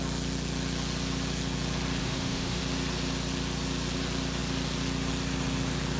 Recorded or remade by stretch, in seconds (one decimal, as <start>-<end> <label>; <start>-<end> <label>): 0.0-2.0 recorded; 2.0-2.6 remade; 2.6-6.0 recorded